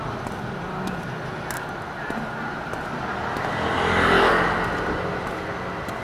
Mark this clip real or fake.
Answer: real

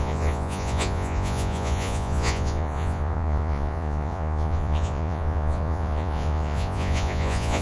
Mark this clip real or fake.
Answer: fake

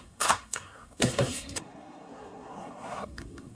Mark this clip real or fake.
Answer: fake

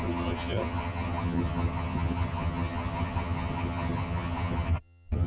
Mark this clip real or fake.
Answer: fake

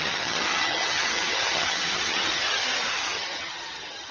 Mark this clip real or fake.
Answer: fake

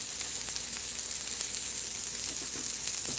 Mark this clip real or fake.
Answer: real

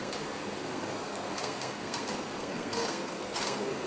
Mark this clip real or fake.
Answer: fake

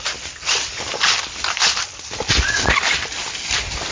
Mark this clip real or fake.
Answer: real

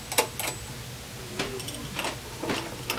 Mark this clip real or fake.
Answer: real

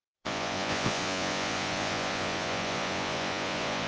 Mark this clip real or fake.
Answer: fake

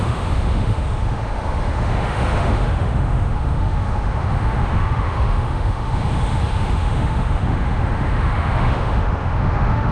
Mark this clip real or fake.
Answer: fake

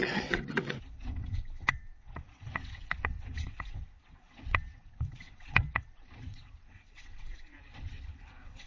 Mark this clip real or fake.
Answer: fake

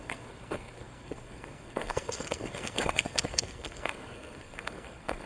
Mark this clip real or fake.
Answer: fake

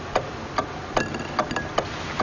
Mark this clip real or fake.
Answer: real